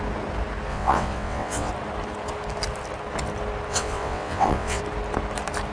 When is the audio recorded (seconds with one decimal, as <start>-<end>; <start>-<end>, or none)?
0.0-0.7; 1.7-3.7; 4.8-5.7